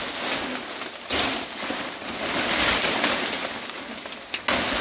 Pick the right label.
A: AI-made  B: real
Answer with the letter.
B